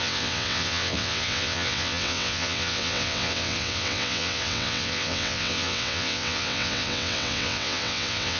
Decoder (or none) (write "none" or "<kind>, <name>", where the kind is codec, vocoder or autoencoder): vocoder, WaveNeXt